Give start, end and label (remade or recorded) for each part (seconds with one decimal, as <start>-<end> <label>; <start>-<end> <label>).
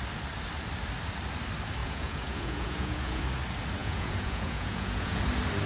0.0-1.8 recorded; 1.8-3.2 remade; 3.2-3.8 recorded; 3.8-5.2 remade; 5.2-5.7 recorded